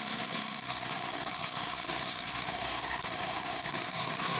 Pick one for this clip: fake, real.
fake